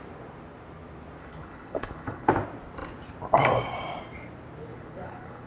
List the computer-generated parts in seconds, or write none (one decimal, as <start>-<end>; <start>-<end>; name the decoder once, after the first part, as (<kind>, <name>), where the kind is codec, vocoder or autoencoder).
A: 1.2-2.3 (codec, HILCodec); 4.7-5.5